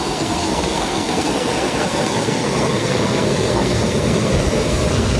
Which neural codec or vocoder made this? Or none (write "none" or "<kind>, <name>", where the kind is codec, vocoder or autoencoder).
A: codec, SNAC